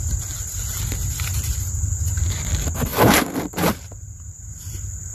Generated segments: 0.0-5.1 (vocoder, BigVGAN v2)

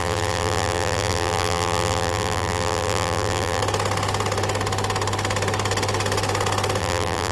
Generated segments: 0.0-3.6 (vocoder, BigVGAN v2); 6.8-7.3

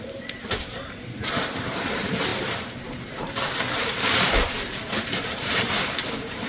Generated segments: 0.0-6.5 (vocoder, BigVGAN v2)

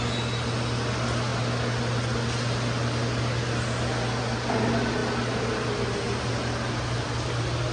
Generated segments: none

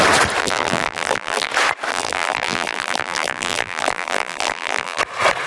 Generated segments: 0.4-1.5 (vocoder, BigVGAN v2); 1.9-5.0